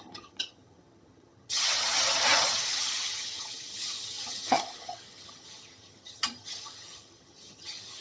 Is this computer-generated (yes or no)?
yes